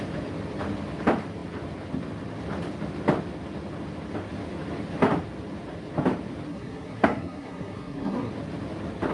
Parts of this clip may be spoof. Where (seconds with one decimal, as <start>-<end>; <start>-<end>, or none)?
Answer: 6.5-8.3